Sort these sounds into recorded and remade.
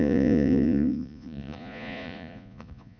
remade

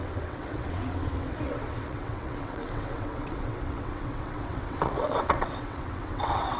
remade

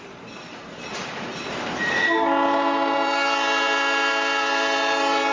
remade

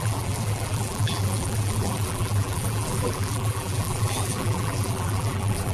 remade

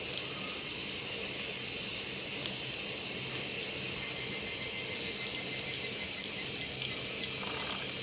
recorded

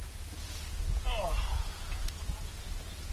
remade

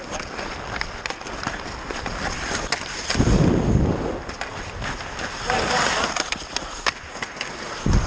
recorded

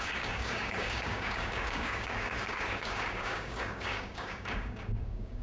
remade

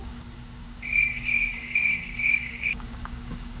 remade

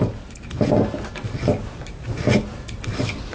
recorded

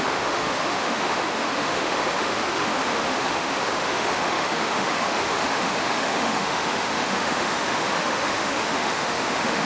remade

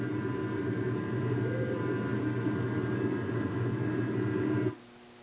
recorded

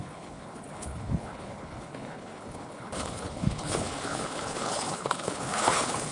remade